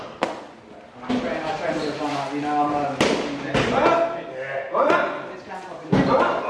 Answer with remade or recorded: recorded